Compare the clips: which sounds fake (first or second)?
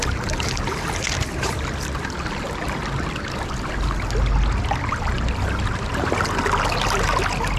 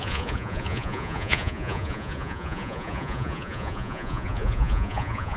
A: second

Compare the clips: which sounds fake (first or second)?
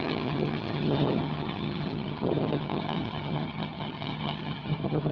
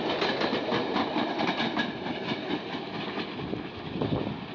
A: first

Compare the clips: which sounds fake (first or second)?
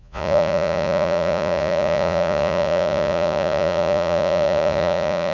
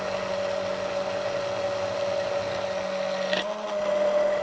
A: first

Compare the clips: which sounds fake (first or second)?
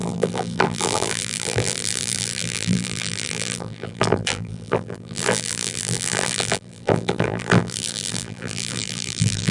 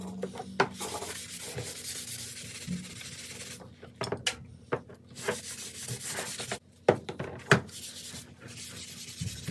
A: first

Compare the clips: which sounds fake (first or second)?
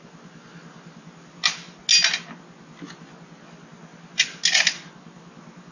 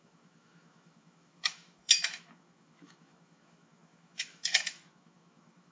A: second